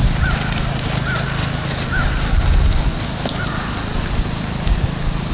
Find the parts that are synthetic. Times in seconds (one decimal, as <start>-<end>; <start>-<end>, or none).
none